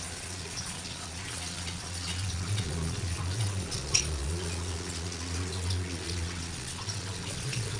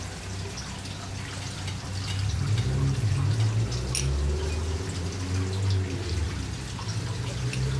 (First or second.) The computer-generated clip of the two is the first